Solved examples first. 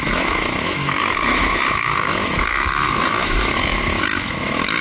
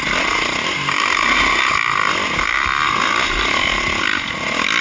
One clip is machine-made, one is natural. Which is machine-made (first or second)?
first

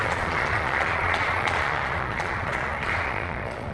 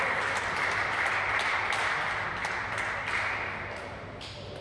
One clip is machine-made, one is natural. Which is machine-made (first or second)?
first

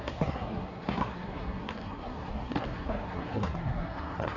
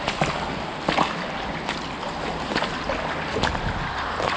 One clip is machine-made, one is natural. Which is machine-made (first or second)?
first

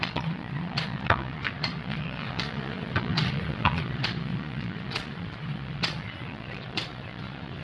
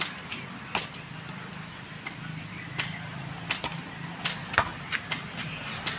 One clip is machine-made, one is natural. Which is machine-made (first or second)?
first